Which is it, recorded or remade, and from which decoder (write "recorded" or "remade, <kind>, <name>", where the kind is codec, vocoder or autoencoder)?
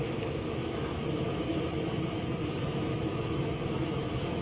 remade, autoencoder, DAC-VAE